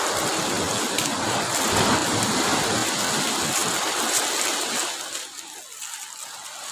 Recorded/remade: recorded